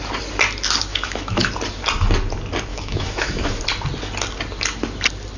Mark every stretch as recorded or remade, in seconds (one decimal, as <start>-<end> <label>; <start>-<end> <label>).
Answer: 0.0-0.9 recorded; 0.9-1.5 remade; 1.5-2.7 recorded; 2.7-3.5 remade; 3.5-5.4 recorded